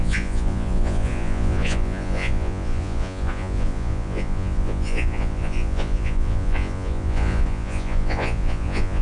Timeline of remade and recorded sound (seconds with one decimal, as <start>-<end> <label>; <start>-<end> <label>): 0.0-9.0 remade